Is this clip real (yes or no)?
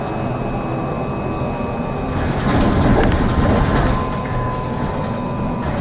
yes